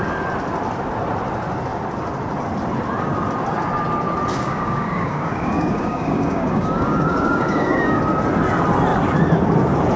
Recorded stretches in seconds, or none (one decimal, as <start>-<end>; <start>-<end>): 0.0-4.3; 8.0-10.0